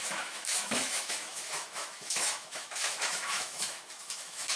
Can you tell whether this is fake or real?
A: fake